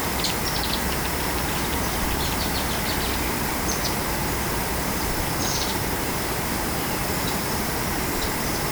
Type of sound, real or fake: fake